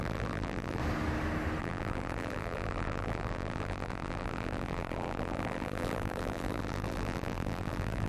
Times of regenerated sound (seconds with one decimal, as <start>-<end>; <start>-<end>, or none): 0.0-0.8; 1.6-8.1